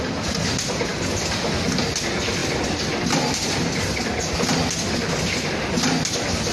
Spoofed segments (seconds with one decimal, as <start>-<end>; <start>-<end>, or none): none

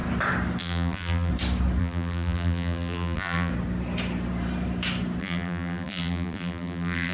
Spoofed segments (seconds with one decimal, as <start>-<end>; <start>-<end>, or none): 0.6-1.3; 1.8-3.5; 5.2-7.1

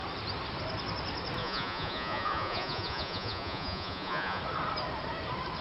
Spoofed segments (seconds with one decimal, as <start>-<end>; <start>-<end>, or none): 1.4-4.4

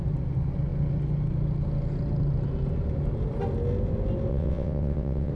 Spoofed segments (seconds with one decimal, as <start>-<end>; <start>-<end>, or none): 4.3-5.3

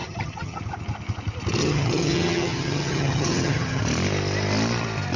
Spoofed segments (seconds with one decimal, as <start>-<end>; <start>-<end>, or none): 0.0-0.6; 1.6-3.8

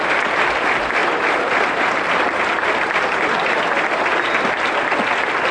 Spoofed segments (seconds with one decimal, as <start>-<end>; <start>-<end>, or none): 1.0-3.1

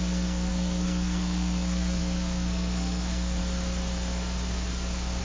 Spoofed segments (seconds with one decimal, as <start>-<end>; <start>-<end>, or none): 0.0-3.4

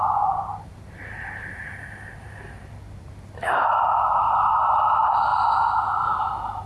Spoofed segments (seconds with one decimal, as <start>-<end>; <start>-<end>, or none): 0.0-1.6; 4.0-5.3; 5.8-6.7